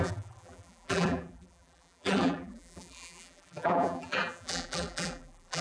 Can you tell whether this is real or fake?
fake